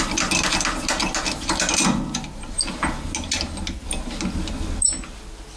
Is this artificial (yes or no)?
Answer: no